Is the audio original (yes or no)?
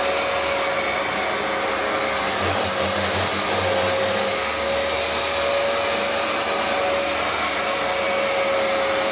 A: yes